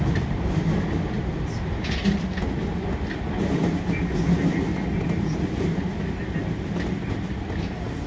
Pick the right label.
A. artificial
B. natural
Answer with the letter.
B